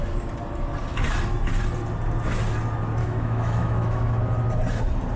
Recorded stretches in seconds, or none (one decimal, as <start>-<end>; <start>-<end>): 0.0-3.0; 4.2-5.2